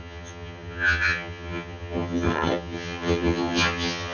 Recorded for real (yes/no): no